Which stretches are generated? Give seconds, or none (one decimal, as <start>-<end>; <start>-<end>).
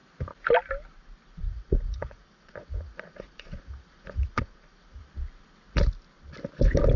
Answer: 1.4-5.0